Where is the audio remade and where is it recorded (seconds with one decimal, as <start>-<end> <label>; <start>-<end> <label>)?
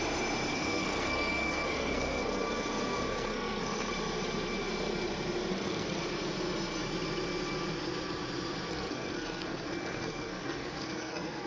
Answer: 0.0-0.5 recorded; 0.5-3.9 remade; 3.9-5.5 recorded; 5.5-6.0 remade; 6.0-8.7 recorded; 8.7-11.5 remade